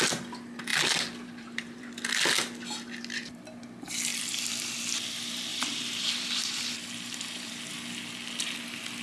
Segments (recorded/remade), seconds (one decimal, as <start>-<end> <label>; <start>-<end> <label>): 0.0-0.7 recorded; 0.7-1.9 remade; 1.9-4.1 recorded; 4.1-4.8 remade; 4.8-5.5 recorded; 5.5-7.5 remade; 7.5-9.0 recorded